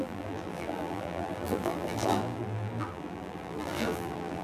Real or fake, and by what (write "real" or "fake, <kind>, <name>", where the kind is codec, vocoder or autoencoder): fake, vocoder, BigVGAN v2